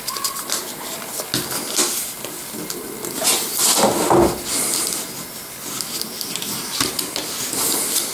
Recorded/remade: recorded